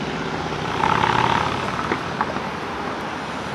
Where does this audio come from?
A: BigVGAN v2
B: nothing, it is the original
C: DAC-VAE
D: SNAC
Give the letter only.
B